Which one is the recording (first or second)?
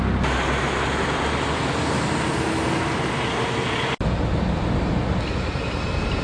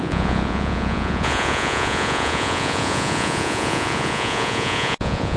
first